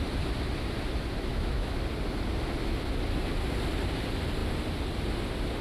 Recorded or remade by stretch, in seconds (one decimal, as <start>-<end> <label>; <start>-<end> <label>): 0.0-1.3 recorded; 1.3-1.8 remade; 1.8-5.6 recorded